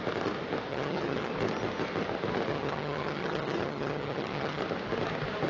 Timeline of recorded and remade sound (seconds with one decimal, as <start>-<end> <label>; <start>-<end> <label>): 0.0-0.7 recorded; 0.7-1.3 remade; 1.3-2.5 recorded; 2.5-4.6 remade; 4.6-5.5 recorded